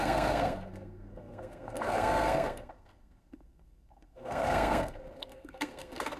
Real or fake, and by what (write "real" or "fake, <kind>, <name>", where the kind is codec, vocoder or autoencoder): fake, codec, SNAC